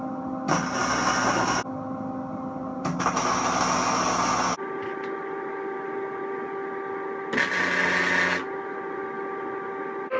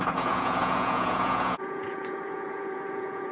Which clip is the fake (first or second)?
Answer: second